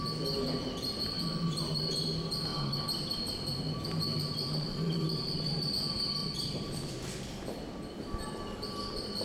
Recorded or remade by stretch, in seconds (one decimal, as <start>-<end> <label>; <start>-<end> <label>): 0.0-2.5 recorded; 2.5-5.6 remade; 5.6-6.2 recorded; 6.2-6.9 remade; 6.9-9.2 recorded